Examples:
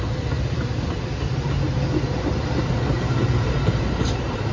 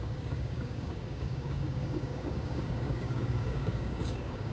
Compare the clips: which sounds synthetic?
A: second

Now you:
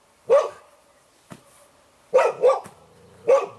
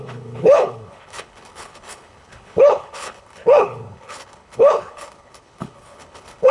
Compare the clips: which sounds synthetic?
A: second